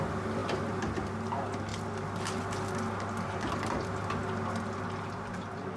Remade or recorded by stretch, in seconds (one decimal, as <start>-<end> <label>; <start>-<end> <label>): 0.0-5.8 recorded